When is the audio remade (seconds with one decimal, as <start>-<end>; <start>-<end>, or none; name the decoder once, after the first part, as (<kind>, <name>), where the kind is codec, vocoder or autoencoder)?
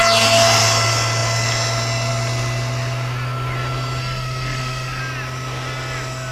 4.0-5.0 (codec, SNAC)